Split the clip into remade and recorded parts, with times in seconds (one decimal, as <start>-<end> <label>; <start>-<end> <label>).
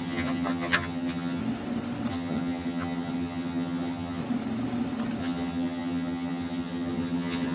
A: 0.0-1.4 remade; 1.4-2.1 recorded; 2.1-4.2 remade; 4.2-5.2 recorded; 5.2-7.5 remade